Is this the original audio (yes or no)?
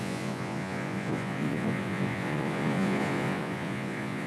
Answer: no